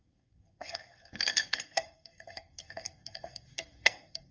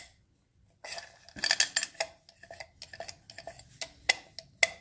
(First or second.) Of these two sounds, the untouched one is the second